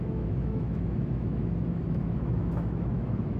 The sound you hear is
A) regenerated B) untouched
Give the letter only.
A